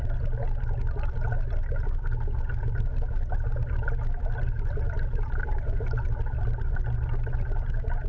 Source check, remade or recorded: recorded